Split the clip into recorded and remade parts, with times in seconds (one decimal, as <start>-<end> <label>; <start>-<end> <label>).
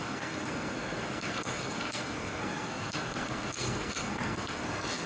0.0-5.1 remade